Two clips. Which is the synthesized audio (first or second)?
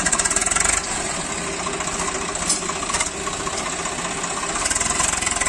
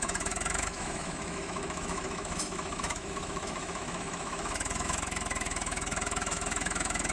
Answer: second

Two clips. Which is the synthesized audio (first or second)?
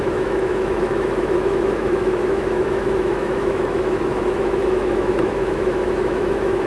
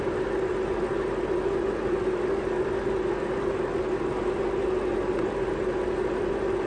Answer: first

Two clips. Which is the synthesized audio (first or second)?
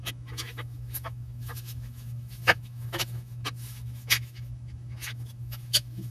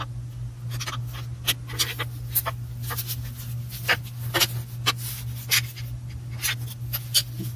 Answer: first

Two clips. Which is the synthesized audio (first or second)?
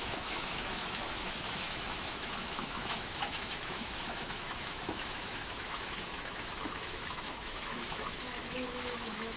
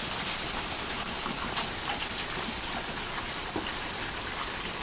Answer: first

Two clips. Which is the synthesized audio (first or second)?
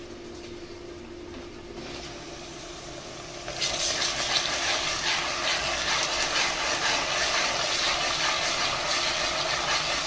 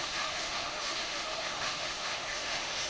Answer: second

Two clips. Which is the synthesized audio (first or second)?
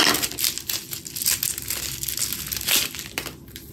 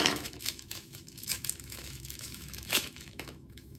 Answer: second